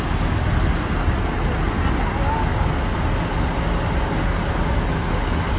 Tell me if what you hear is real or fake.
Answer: real